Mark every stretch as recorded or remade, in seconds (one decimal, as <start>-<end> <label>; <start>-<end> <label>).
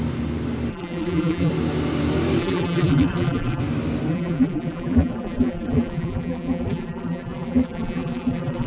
0.0-0.7 recorded; 0.7-1.5 remade; 1.5-2.4 recorded; 2.4-3.6 remade; 3.6-4.1 recorded; 4.1-8.7 remade